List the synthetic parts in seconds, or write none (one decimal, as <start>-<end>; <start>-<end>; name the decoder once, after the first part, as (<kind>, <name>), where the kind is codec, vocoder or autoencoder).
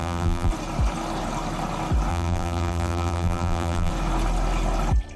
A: 0.0-0.5 (vocoder, BigVGAN v2); 2.1-3.9